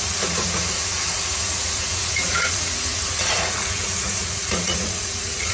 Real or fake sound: fake